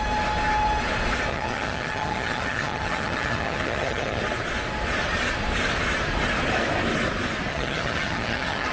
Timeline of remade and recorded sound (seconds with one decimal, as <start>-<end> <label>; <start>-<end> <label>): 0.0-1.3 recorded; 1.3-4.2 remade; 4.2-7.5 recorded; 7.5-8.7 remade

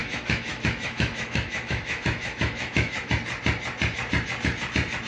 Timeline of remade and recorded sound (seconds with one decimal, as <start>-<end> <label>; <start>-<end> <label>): 0.0-3.1 remade; 3.1-5.1 recorded

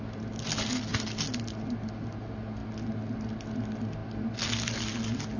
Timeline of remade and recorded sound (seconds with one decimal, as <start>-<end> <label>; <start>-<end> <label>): 0.0-5.4 recorded

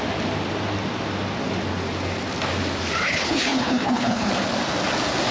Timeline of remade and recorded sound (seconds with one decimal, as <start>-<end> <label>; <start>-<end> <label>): 0.0-3.0 recorded; 3.0-4.3 remade; 4.3-5.3 recorded

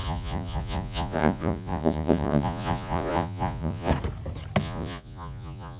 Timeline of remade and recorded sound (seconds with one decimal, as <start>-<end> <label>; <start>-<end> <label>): 0.0-3.9 remade; 3.9-4.6 recorded; 4.6-5.8 remade